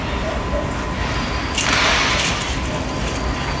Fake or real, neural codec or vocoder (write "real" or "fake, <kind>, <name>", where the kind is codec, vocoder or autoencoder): real